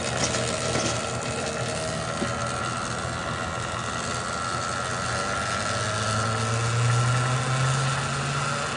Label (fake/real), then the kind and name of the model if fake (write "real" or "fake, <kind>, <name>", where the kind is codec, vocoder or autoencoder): real